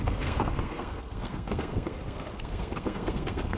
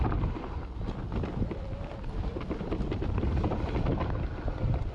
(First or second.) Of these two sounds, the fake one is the first